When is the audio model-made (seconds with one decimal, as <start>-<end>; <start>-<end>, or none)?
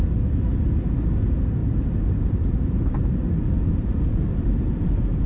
1.6-4.8